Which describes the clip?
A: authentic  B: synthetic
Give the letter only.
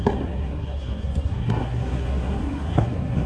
B